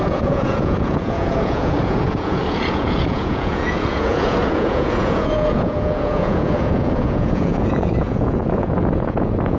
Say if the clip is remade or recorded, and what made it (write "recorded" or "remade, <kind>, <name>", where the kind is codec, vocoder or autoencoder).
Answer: remade, vocoder, Vocos